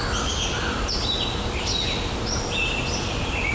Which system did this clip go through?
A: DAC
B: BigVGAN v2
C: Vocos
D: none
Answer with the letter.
D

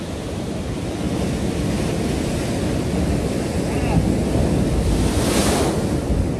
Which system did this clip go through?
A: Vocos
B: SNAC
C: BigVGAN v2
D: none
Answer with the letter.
D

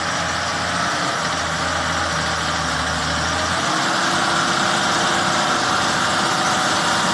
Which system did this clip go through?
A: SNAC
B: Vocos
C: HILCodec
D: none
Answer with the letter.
D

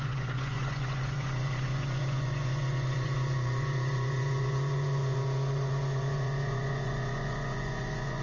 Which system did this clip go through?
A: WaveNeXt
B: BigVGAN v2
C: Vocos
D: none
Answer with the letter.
C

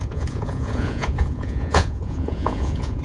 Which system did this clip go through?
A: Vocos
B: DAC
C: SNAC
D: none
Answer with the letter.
A